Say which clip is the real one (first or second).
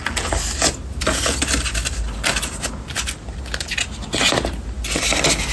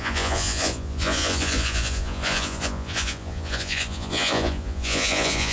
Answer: first